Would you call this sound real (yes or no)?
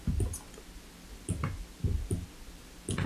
yes